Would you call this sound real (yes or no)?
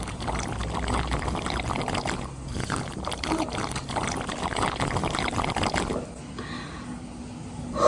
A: yes